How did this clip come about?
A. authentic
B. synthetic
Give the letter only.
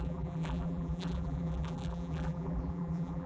B